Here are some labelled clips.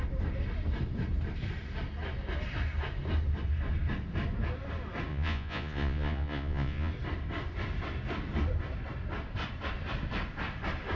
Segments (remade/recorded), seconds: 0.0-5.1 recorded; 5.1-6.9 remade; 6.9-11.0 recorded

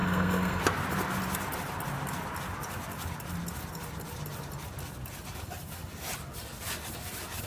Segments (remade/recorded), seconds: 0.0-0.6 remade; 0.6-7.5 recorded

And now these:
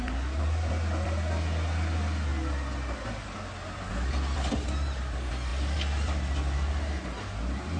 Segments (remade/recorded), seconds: 0.0-7.8 recorded